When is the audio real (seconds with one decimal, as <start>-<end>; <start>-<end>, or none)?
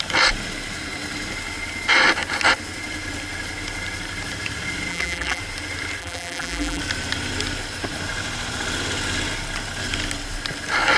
0.0-4.9; 5.4-6.0; 6.8-11.0